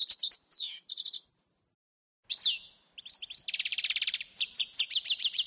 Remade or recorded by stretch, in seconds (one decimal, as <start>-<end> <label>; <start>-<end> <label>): 0.0-1.6 remade; 1.6-3.7 recorded; 3.7-4.9 remade; 4.9-5.5 recorded